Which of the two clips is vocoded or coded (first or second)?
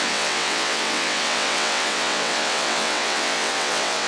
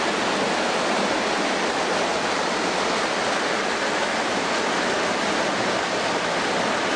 first